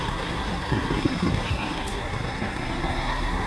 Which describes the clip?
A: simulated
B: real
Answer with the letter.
A